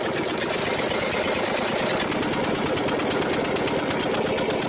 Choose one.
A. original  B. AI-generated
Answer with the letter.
A